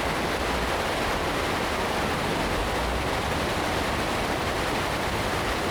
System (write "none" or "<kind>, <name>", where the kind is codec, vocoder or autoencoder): none